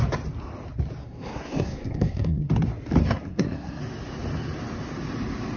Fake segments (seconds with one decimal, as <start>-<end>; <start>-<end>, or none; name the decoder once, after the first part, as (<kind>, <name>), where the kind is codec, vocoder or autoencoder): 1.0-2.5 (codec, SNAC); 3.0-3.8